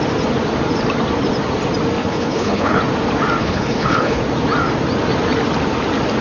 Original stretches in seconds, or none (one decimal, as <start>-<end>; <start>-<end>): 0.0-2.0; 2.8-3.4; 4.2-6.2